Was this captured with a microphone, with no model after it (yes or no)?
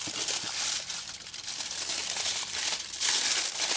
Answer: yes